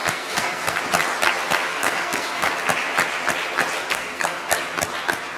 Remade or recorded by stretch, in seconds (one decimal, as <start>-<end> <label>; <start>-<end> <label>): 0.0-0.8 remade; 0.8-1.7 recorded; 1.7-2.5 remade; 2.5-3.8 recorded; 3.8-4.5 remade; 4.5-5.4 recorded